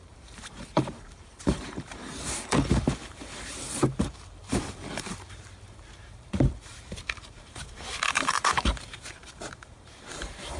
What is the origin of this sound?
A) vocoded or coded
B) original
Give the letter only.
A